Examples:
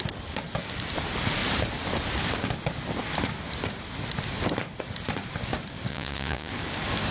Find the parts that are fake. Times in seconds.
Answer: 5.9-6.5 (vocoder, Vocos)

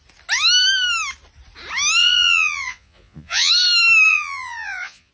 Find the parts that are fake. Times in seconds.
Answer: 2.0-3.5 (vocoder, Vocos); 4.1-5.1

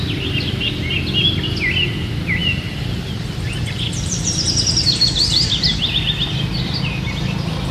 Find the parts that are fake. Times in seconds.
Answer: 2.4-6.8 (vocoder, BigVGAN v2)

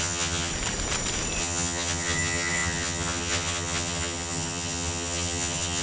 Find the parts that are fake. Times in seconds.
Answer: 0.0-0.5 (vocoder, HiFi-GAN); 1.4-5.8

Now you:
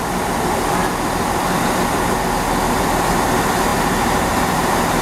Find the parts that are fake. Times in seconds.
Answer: 0.0-0.8 (vocoder, BigVGAN v2); 2.7-3.7; 4.4-5.0

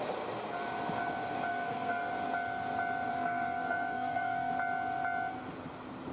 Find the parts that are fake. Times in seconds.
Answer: 1.5-2.1 (codec, SNAC); 3.1-4.5